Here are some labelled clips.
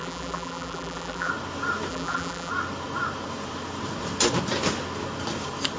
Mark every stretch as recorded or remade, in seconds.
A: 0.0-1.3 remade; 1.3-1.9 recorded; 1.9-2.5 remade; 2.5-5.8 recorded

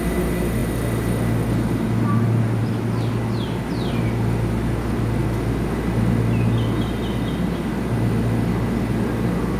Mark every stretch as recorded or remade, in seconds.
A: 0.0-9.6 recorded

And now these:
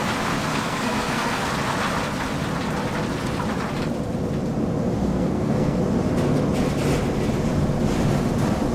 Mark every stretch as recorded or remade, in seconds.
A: 0.0-0.5 recorded; 0.5-1.5 remade; 1.5-5.0 recorded; 5.0-5.8 remade; 5.8-8.7 recorded